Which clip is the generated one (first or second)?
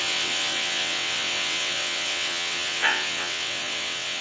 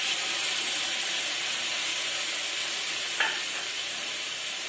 first